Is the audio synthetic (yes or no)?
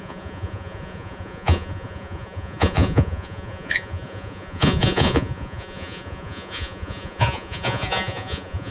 yes